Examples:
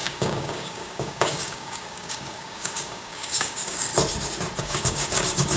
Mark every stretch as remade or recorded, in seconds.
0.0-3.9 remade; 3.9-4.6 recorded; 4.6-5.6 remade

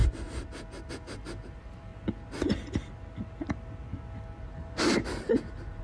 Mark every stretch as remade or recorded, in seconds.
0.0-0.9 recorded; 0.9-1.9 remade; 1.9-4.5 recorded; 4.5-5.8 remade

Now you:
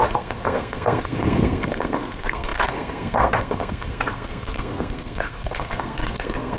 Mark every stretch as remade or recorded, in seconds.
0.0-6.6 remade

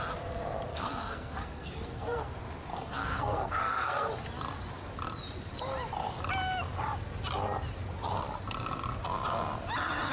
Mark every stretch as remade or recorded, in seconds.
0.0-0.7 recorded; 0.7-2.3 remade; 2.3-2.7 recorded; 2.7-4.1 remade; 4.1-10.1 recorded

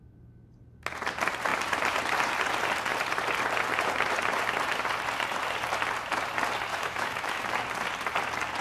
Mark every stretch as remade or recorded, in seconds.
0.0-6.7 recorded; 6.7-7.4 remade; 7.4-8.6 recorded

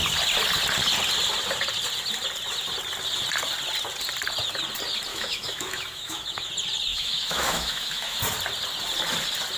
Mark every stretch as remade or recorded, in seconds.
0.0-5.1 recorded; 5.1-6.5 remade; 6.5-6.9 recorded; 6.9-8.2 remade; 8.2-9.6 recorded

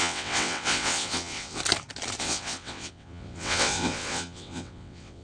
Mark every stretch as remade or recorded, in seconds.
0.0-1.6 remade; 1.6-2.2 recorded; 2.2-5.2 remade